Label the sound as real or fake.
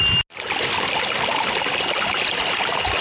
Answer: real